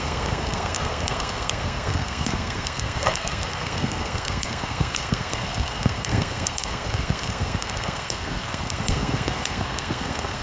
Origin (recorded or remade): remade